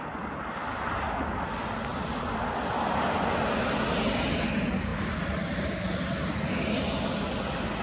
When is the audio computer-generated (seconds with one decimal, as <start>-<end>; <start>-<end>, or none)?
none